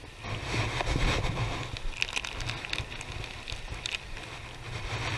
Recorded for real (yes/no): yes